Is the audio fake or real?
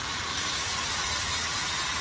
fake